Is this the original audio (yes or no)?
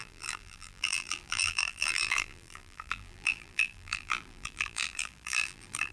no